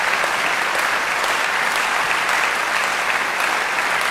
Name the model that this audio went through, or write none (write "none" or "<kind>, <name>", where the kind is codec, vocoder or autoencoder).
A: none